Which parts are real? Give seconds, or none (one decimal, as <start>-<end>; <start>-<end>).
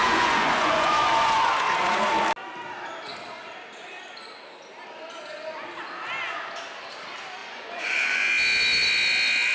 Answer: 2.1-7.4; 8.3-9.5